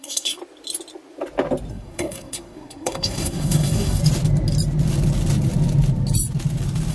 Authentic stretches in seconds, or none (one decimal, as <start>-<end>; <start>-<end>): 0.4-1.7; 4.0-6.9